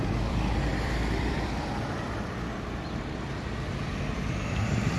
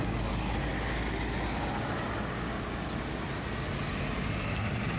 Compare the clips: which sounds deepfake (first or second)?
first